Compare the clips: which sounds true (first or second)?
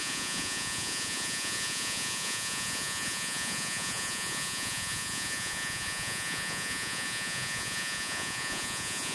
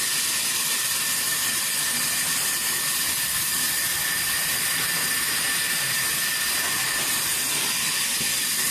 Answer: second